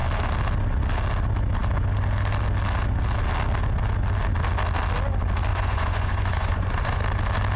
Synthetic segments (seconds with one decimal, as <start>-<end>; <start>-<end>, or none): 5.5-7.0